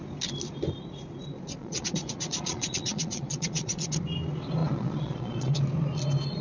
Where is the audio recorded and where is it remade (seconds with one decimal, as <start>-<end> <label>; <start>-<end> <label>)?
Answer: 0.0-1.6 recorded; 1.6-3.9 remade; 3.9-4.6 recorded; 4.6-5.5 remade; 5.5-6.4 recorded